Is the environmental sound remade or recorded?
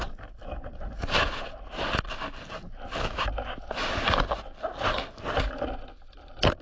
recorded